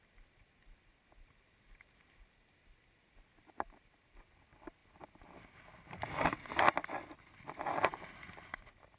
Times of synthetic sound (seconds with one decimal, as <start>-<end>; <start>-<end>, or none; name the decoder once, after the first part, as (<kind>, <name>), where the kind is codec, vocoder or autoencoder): none